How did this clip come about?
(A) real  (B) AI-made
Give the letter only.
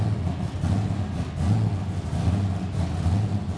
A